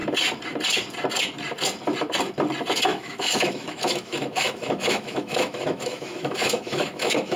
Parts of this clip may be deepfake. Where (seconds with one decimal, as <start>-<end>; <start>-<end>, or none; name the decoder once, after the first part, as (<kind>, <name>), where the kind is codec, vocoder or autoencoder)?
2.9-7.4 (autoencoder, DAC-VAE)